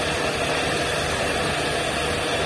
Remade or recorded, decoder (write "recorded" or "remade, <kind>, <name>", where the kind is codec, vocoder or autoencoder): recorded